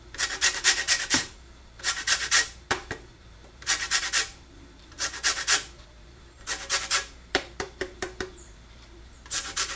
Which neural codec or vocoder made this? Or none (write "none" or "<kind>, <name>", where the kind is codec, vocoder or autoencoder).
vocoder, BigVGAN v2